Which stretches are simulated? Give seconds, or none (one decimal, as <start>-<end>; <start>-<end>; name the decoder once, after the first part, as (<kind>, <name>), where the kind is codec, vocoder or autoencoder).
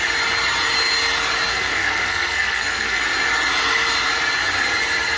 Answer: 1.5-3.0 (codec, SNAC)